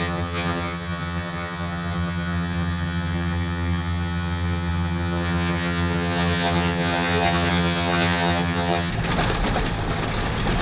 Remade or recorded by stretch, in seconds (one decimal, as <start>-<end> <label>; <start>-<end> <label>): 0.0-8.9 remade; 8.9-10.6 recorded

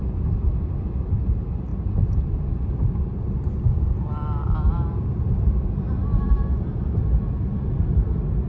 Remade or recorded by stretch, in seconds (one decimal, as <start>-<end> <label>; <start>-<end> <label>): 0.0-1.1 remade; 1.1-1.7 recorded; 1.7-5.0 remade; 5.0-8.5 recorded

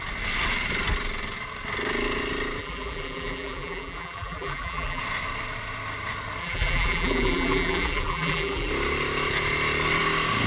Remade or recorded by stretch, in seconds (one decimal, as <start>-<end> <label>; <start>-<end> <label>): 0.0-2.6 recorded; 2.6-5.0 remade; 5.0-6.4 recorded; 6.4-8.7 remade; 8.7-10.5 recorded

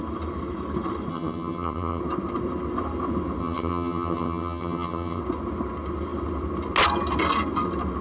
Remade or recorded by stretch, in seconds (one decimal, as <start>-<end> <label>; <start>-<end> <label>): 0.0-1.1 recorded; 1.1-2.0 remade; 2.0-3.4 recorded; 3.4-5.2 remade; 5.2-8.0 recorded

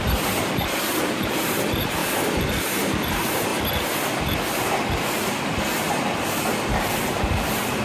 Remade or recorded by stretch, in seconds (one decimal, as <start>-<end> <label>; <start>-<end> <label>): 0.0-2.0 remade; 2.0-2.6 recorded; 2.6-3.5 remade; 3.5-6.7 recorded; 6.7-7.8 remade

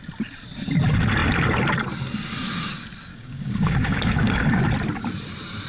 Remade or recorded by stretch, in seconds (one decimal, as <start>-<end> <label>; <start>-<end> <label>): 0.0-3.1 recorded; 3.1-4.6 remade; 4.6-5.7 recorded

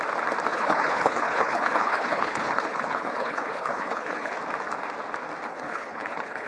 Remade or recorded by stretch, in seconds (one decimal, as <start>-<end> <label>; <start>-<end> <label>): 0.0-0.5 recorded; 0.5-4.4 remade; 4.4-5.5 recorded; 5.5-6.5 remade

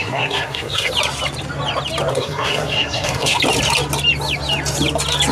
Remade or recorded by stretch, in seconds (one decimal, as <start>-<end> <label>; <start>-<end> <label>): 0.0-0.9 remade; 0.9-2.1 recorded; 2.1-3.4 remade; 3.4-5.3 recorded